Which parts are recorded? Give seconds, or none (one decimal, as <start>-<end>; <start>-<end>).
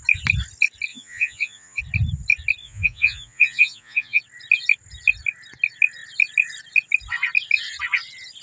0.0-0.9; 1.8-2.6; 4.2-8.4